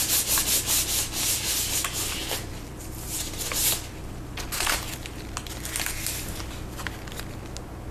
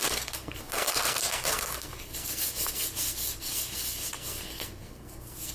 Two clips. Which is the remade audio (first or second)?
second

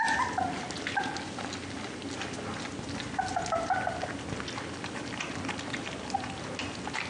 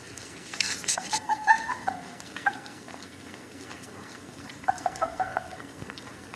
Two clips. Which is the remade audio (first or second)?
second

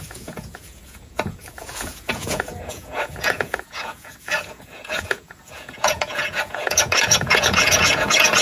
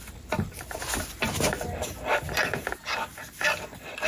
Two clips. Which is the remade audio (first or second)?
first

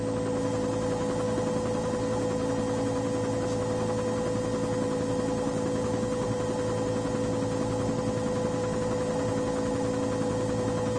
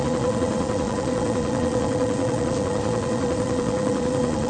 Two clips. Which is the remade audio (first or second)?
second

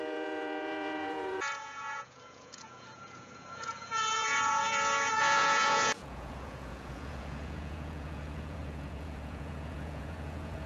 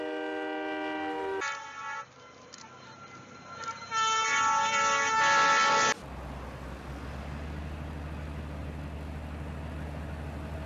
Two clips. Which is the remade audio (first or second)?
first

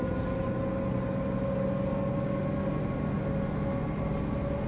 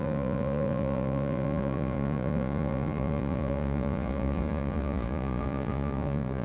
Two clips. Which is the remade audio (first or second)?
second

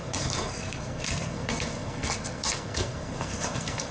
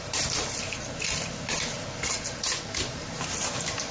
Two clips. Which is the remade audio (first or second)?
first